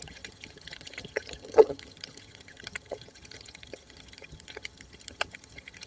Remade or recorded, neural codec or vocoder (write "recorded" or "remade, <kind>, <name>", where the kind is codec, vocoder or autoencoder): remade, vocoder, HiFi-GAN